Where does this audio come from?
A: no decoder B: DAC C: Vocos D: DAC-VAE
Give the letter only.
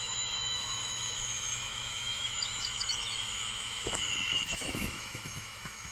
D